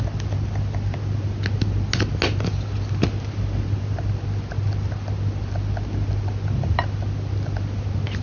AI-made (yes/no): no